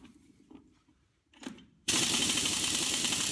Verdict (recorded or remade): remade